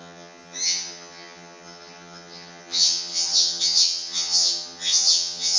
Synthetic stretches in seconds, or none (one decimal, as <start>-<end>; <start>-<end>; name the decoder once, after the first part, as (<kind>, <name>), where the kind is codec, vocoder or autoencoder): 0.0-5.6 (vocoder, HiFi-GAN)